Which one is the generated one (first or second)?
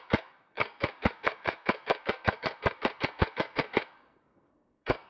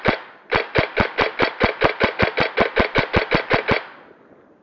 first